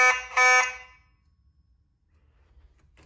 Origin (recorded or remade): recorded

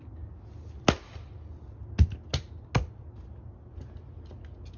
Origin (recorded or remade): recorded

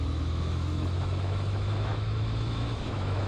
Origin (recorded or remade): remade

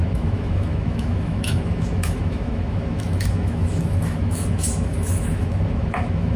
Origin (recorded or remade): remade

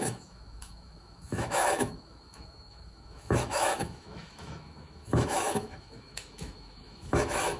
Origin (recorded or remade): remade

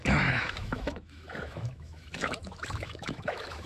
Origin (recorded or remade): remade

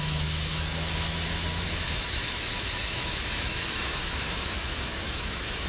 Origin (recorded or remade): remade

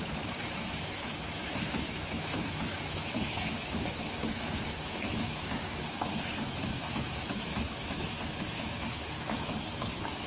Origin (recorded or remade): remade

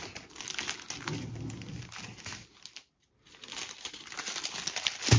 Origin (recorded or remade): recorded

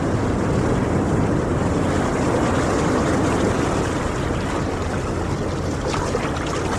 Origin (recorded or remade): recorded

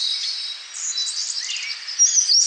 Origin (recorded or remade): recorded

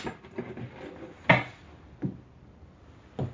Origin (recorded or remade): recorded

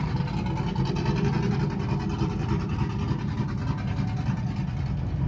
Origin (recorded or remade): recorded